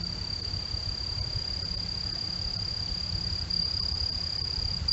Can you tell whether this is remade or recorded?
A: recorded